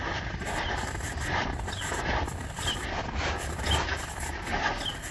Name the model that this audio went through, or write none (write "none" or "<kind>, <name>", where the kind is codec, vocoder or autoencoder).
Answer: none